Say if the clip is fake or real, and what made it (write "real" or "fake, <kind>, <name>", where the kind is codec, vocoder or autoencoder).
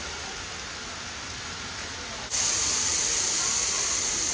real